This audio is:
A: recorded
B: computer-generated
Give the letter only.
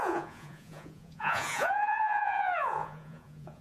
B